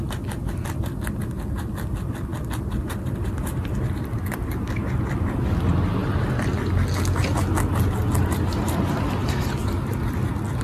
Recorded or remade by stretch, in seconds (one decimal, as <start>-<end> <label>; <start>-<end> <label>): 0.0-10.6 recorded